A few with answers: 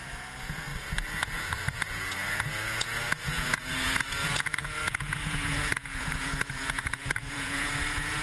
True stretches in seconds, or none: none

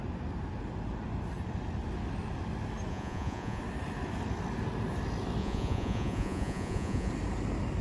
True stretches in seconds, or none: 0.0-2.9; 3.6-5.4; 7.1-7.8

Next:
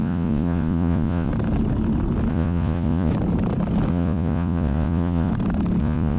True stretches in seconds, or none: 1.3-2.3; 3.1-3.9; 5.3-5.8